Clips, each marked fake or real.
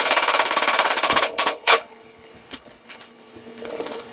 fake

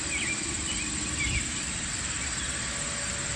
real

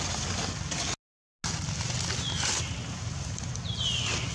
real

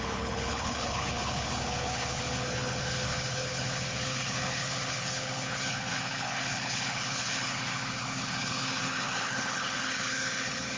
fake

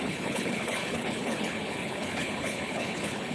fake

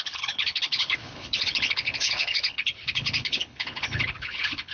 fake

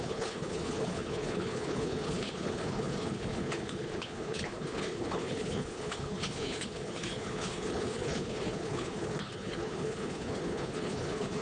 fake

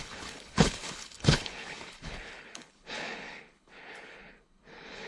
fake